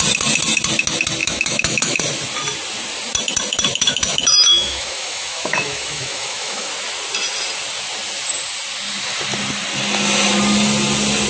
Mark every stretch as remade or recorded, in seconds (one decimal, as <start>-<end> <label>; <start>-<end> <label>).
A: 0.0-1.2 recorded; 1.2-2.0 remade; 2.0-3.7 recorded; 3.7-6.7 remade; 6.7-11.3 recorded